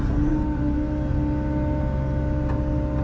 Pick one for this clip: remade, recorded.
recorded